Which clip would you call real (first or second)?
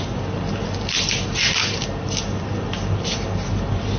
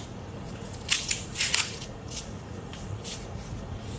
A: first